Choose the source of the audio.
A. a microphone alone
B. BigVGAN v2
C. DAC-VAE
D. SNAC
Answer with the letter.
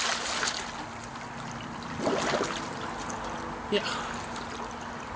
A